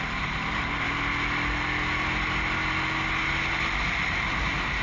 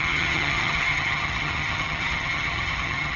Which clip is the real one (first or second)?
first